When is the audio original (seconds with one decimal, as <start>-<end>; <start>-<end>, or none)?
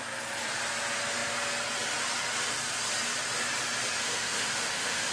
0.0-4.1